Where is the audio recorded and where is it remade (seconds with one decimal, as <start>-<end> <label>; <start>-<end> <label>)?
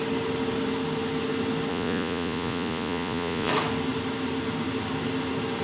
0.0-1.7 recorded; 1.7-3.5 remade; 3.5-5.6 recorded